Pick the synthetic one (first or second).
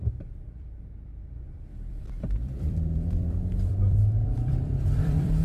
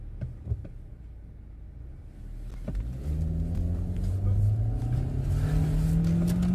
first